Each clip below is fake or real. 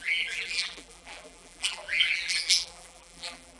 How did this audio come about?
fake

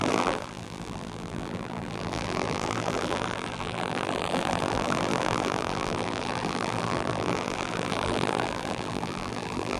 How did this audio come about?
fake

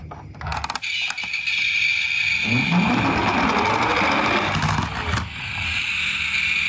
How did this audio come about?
real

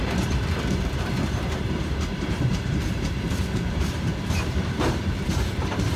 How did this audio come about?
fake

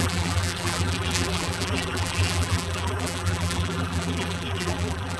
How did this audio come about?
fake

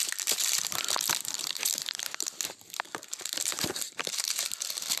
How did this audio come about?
fake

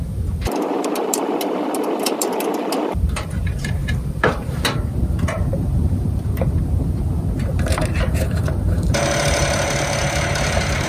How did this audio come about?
fake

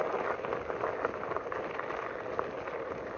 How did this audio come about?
real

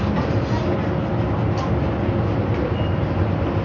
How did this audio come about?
real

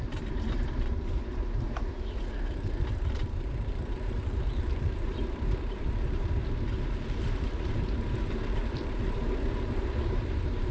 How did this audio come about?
fake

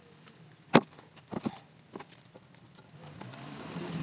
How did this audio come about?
fake